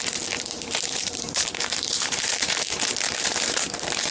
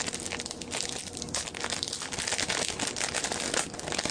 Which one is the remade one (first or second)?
first